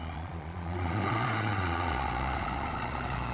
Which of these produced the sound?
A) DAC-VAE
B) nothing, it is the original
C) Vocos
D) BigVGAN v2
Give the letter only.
C